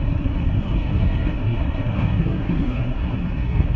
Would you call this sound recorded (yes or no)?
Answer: no